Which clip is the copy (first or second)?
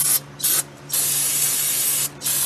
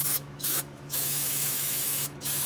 second